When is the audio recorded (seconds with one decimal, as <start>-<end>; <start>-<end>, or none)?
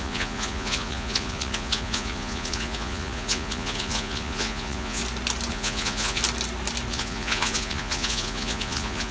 5.0-5.5; 6.2-6.9